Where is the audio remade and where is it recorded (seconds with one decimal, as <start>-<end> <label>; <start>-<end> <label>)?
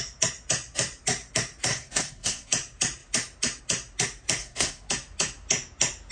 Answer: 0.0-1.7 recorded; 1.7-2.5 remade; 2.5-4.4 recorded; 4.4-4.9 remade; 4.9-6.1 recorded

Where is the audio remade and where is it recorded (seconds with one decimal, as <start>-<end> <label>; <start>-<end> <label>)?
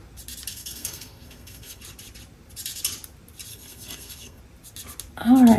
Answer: 0.0-0.5 recorded; 0.5-1.8 remade; 1.8-3.5 recorded; 3.5-4.4 remade; 4.4-5.6 recorded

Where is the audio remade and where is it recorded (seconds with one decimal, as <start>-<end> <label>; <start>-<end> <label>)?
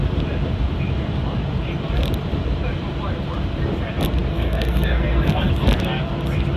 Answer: 0.0-4.3 recorded; 4.3-5.5 remade; 5.5-6.6 recorded